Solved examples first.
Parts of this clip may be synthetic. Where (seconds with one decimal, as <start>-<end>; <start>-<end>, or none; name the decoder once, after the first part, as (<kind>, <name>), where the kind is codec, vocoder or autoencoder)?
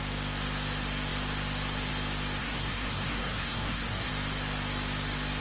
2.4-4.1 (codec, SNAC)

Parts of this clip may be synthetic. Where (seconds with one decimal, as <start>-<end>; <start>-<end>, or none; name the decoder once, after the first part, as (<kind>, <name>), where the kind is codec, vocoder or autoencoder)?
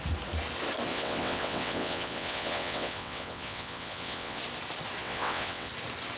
0.9-4.4 (vocoder, WaveNeXt); 5.0-5.7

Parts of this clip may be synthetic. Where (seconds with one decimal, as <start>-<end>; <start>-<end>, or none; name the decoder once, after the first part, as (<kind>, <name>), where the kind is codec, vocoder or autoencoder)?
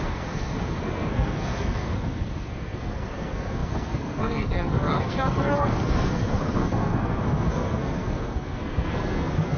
0.0-9.6 (codec, SNAC)